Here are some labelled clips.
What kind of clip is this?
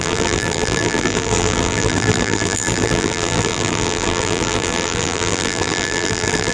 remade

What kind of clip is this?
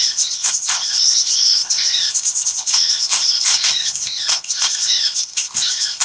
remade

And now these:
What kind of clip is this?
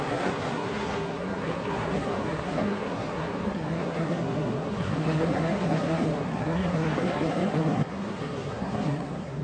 remade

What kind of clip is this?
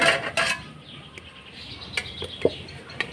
recorded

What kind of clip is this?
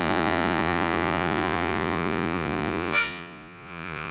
remade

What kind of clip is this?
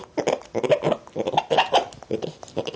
recorded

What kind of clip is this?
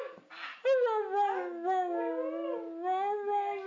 recorded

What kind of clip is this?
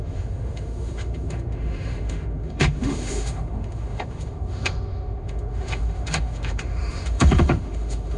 remade